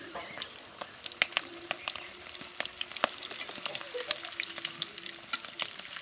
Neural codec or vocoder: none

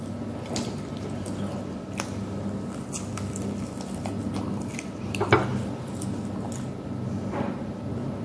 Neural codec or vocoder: none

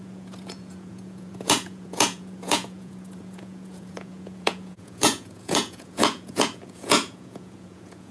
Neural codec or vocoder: vocoder, Vocos